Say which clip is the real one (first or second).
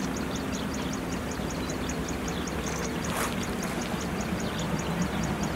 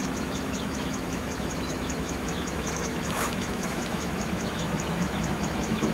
first